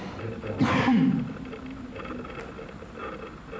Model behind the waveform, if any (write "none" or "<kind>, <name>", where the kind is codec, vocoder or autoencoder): none